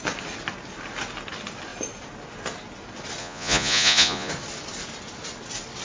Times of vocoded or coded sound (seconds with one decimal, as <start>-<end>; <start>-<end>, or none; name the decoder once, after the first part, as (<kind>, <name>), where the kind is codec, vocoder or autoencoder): 3.2-4.3 (vocoder, Vocos)